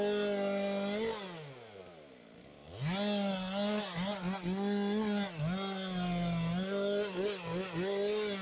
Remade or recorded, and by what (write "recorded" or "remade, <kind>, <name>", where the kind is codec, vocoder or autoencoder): recorded